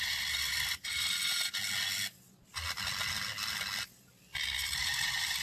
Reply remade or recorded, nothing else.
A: recorded